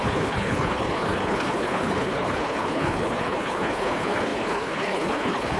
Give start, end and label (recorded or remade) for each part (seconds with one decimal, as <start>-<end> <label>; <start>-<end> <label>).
0.0-5.6 remade

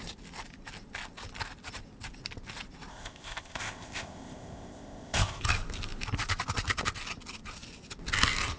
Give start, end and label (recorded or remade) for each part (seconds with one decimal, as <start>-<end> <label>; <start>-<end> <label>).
0.0-2.9 recorded; 2.9-5.4 remade; 5.4-8.6 recorded

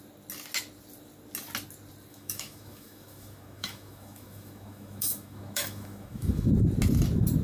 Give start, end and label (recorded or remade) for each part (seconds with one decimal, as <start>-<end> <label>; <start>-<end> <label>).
0.0-2.1 recorded; 2.1-6.5 remade; 6.5-7.4 recorded

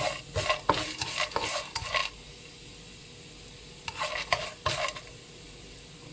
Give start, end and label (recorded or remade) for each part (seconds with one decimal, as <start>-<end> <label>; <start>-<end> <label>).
0.0-6.1 recorded

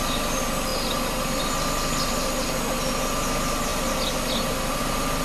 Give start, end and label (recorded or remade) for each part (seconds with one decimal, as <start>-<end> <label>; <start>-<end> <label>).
0.0-5.2 recorded

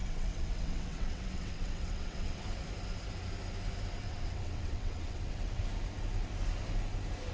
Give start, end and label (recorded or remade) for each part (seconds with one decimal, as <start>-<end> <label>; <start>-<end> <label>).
0.0-2.4 remade; 2.4-4.0 recorded; 4.0-5.6 remade; 5.6-7.3 recorded

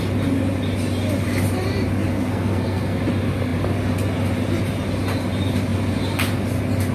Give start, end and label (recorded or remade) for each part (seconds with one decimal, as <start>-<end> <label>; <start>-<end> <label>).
0.0-2.1 recorded; 2.1-3.0 remade; 3.0-6.9 recorded